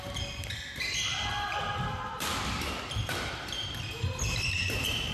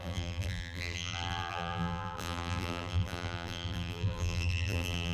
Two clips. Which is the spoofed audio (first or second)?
second